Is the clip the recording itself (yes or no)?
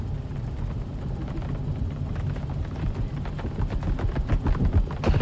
yes